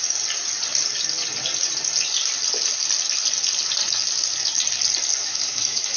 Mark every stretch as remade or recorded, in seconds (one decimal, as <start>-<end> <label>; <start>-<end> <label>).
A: 0.0-5.2 recorded; 5.2-6.0 remade